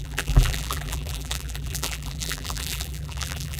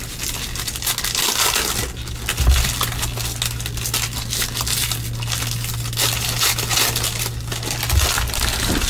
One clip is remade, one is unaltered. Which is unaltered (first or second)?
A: second